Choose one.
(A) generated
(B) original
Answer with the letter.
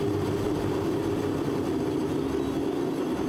B